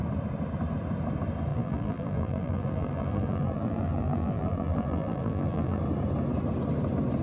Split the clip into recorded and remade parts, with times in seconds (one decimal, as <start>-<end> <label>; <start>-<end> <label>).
0.0-1.5 recorded; 1.5-5.8 remade; 5.8-7.2 recorded